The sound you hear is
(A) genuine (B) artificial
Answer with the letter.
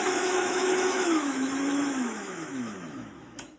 B